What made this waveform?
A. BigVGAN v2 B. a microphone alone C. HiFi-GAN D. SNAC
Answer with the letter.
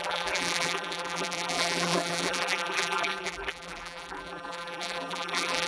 A